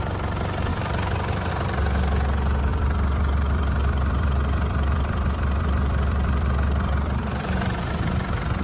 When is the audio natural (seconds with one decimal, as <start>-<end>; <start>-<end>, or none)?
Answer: 0.0-0.7; 1.5-2.7; 7.9-8.6